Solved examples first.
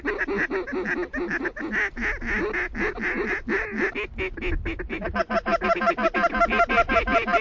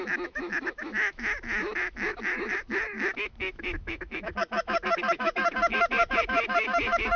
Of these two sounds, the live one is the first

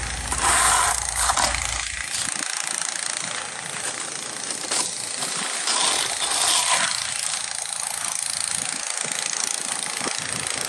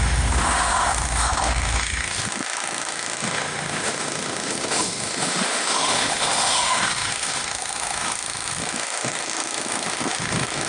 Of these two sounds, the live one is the first